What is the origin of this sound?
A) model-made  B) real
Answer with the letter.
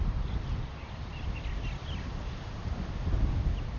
B